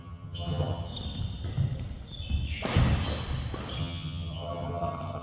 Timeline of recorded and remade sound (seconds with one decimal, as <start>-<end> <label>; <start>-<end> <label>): 0.0-0.9 remade; 0.9-3.8 recorded; 3.8-5.2 remade